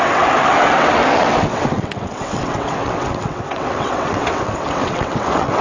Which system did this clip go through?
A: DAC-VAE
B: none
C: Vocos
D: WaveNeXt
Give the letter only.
D